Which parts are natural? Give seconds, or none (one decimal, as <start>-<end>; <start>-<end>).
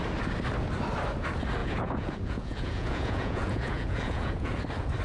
0.0-1.6; 4.6-5.0